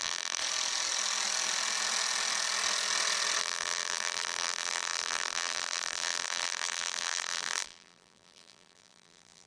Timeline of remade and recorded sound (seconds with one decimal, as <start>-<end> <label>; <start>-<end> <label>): 0.0-0.4 remade; 0.4-3.4 recorded; 3.4-9.5 remade